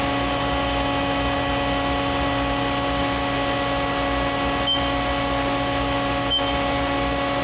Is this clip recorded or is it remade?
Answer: recorded